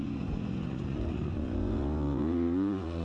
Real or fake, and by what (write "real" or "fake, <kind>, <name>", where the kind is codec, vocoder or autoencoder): fake, vocoder, Vocos